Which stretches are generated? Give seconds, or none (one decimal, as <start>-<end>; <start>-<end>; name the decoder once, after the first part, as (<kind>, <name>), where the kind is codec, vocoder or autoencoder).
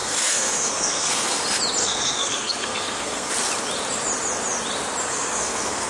0.0-1.4 (codec, SNAC); 1.8-3.3; 5.1-5.9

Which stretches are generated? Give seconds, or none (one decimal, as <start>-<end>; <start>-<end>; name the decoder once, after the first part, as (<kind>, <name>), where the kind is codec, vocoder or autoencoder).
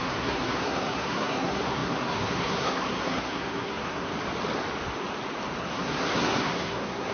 0.0-4.1 (codec, SNAC); 5.6-7.1